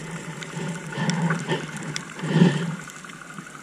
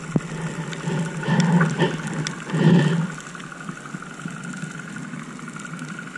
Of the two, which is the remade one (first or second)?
first